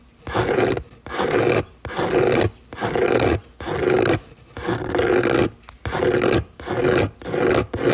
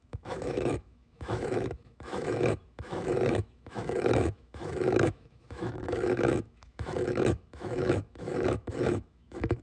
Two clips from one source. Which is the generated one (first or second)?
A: second